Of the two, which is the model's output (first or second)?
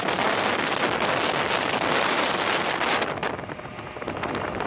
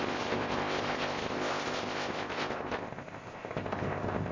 second